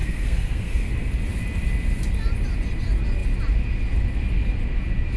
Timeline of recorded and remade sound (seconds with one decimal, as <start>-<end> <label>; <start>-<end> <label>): 0.0-0.9 remade; 0.9-5.2 recorded